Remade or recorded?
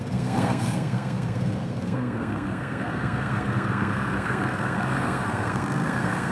remade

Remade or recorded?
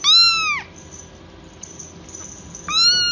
recorded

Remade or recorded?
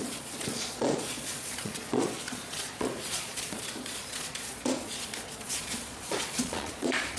remade